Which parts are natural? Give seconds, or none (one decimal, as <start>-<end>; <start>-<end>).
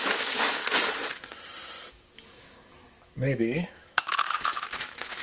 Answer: 0.6-1.9